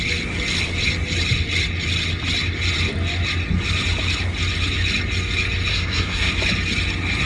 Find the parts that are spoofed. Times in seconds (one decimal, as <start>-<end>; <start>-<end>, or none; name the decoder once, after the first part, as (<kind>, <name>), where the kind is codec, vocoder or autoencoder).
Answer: 5.7-6.3 (codec, SNAC)